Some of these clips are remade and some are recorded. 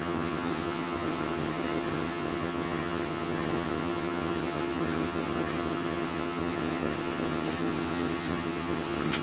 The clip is remade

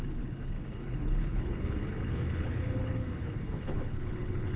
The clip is remade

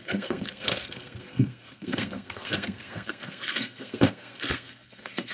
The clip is remade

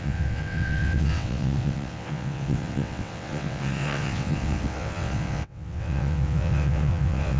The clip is remade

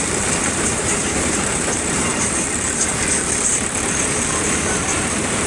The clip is remade